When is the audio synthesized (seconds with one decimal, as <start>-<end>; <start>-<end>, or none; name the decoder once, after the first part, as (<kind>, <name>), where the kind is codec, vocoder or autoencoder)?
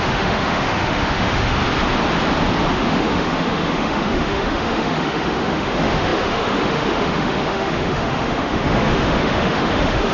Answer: 0.0-1.6 (autoencoder, DAC-VAE); 2.7-10.1